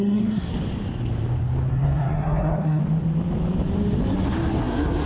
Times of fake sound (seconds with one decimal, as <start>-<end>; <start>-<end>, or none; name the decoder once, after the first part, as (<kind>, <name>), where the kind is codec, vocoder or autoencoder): 0.0-0.5 (codec, SNAC); 1.7-2.8; 4.6-5.1